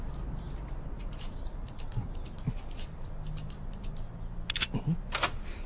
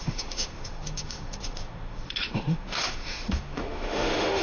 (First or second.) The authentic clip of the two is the first